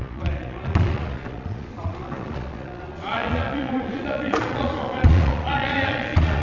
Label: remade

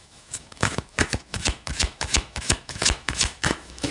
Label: remade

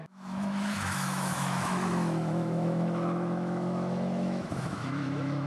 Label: remade